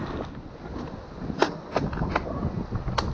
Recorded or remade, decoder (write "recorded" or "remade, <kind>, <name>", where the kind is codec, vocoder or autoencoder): recorded